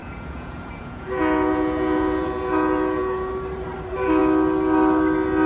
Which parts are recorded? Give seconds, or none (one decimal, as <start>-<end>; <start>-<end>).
3.3-5.5